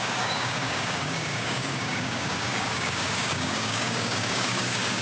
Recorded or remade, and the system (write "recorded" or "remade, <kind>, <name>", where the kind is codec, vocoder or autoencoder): remade, codec, DAC